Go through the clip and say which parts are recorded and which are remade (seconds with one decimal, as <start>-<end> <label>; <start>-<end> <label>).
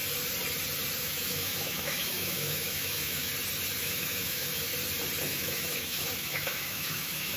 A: 0.0-1.0 recorded; 1.0-3.3 remade; 3.3-3.8 recorded; 3.8-4.7 remade; 4.7-5.3 recorded; 5.3-7.4 remade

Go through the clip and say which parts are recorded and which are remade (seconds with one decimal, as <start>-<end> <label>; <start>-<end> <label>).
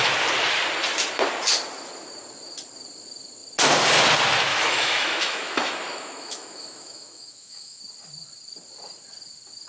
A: 0.0-4.5 recorded; 4.5-7.8 remade; 7.8-9.7 recorded